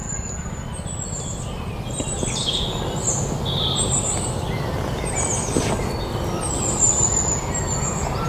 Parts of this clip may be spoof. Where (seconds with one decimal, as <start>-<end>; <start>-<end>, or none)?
none